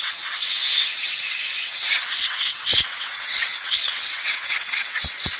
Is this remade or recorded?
remade